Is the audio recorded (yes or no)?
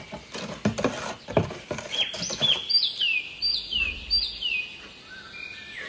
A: yes